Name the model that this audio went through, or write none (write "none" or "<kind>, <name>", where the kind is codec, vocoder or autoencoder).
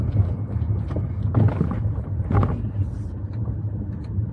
none